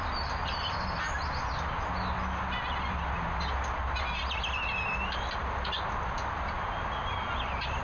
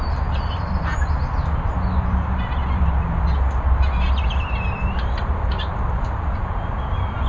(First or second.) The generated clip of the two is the second